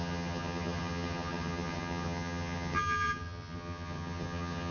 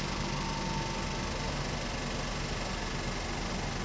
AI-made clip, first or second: first